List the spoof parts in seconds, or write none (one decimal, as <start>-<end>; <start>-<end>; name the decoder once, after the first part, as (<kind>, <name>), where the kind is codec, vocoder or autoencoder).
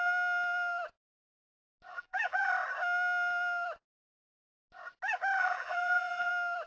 1.9-2.5 (vocoder, BigVGAN v2); 5.4-6.3